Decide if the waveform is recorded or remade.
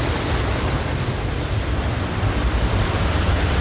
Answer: remade